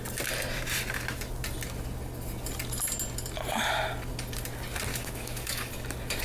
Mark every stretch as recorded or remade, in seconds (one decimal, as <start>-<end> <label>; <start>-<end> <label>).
0.0-4.9 recorded; 4.9-5.7 remade; 5.7-6.2 recorded

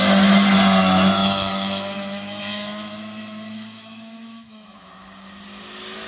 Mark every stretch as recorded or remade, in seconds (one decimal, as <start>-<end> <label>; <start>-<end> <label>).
0.0-1.2 recorded; 1.2-4.9 remade; 4.9-6.1 recorded

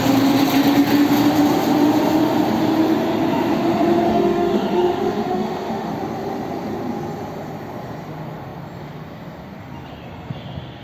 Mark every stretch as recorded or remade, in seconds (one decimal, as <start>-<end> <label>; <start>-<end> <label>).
0.0-4.1 recorded; 4.1-5.9 remade; 5.9-10.8 recorded

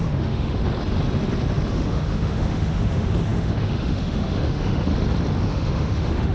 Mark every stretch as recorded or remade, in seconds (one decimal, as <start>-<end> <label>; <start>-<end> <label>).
0.0-0.6 remade; 0.6-1.7 recorded; 1.7-4.9 remade; 4.9-5.4 recorded; 5.4-6.3 remade

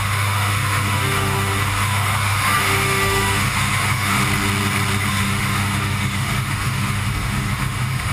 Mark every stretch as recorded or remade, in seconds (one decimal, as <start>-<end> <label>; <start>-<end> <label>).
0.0-4.2 remade; 4.2-5.1 recorded; 5.1-8.1 remade

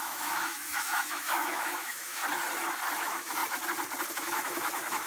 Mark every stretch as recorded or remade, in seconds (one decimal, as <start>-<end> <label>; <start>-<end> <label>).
0.0-2.2 remade; 2.2-3.0 recorded; 3.0-3.4 remade; 3.4-4.1 recorded; 4.1-5.1 remade

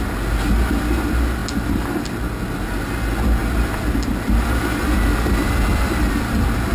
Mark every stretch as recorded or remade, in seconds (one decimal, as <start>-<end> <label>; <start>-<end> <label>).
0.0-6.7 recorded